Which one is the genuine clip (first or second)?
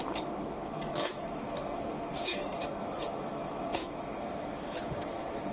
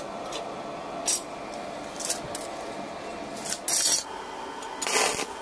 second